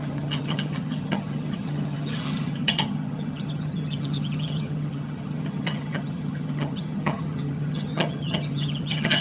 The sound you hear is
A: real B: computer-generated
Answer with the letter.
B